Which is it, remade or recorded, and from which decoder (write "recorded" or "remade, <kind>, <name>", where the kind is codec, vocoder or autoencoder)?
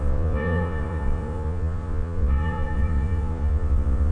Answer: remade, vocoder, Vocos